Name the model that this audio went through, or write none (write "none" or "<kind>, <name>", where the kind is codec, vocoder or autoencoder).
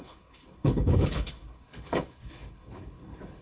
codec, HILCodec